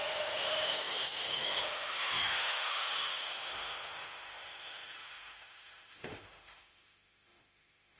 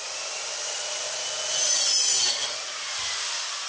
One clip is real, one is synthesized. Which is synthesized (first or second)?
first